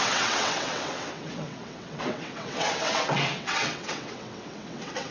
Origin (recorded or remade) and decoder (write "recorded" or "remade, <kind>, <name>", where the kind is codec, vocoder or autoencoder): remade, vocoder, WaveNeXt